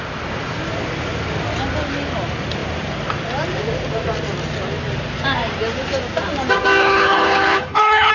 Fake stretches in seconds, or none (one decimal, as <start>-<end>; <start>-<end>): 6.8-8.1

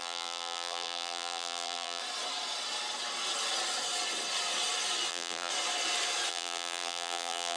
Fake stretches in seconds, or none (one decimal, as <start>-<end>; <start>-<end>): 0.0-2.0; 5.1-5.5; 6.3-7.6

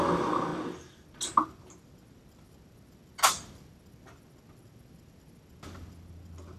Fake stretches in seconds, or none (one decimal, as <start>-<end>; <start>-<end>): none

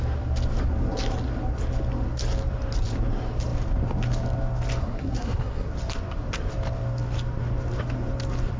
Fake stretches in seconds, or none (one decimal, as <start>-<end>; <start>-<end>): 4.8-5.7

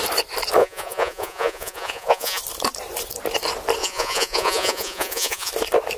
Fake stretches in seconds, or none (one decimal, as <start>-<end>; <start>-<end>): 0.6-2.4; 3.8-5.5

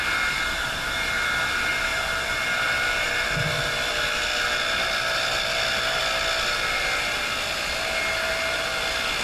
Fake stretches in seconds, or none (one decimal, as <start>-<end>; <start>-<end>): none

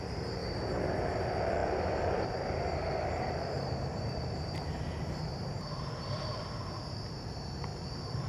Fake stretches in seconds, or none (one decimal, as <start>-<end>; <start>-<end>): 0.0-8.3